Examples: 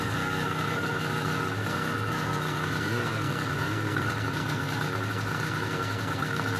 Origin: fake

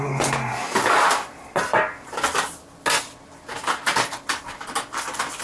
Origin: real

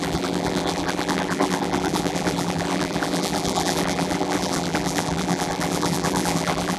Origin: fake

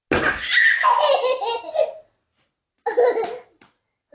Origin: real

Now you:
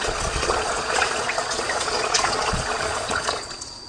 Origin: fake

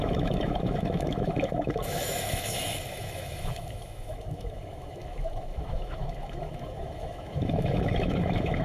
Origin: fake